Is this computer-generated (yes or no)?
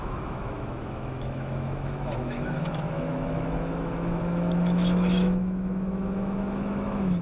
yes